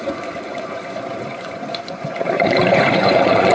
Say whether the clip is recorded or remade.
remade